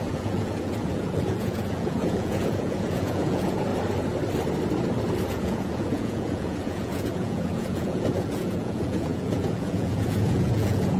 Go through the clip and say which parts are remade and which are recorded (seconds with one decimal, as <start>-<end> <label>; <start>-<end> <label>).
0.0-3.7 remade; 3.7-5.3 recorded; 5.3-11.0 remade